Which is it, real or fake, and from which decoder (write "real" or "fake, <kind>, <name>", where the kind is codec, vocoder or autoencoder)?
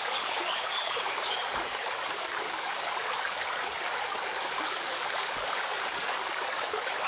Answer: fake, codec, DAC